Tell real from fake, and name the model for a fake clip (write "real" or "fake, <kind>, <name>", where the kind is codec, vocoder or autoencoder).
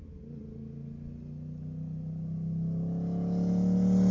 real